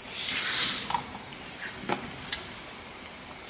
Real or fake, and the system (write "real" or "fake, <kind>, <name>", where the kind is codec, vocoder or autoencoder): real